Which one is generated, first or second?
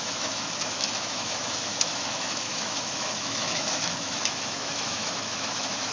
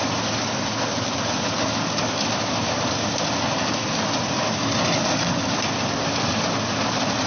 first